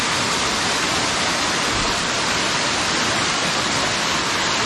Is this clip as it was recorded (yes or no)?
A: yes